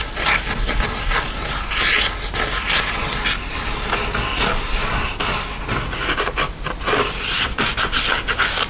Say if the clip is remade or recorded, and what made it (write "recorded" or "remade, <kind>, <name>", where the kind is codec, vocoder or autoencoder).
recorded